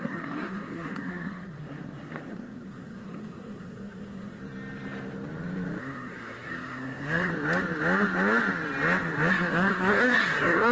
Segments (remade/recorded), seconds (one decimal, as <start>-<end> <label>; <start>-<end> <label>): 0.0-4.4 remade; 4.4-5.8 recorded; 5.8-7.3 remade; 7.3-9.3 recorded; 9.3-10.7 remade